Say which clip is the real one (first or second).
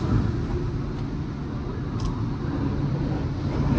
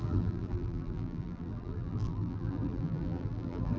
first